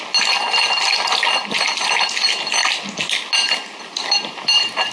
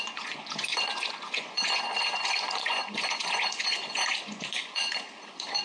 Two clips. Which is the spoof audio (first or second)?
second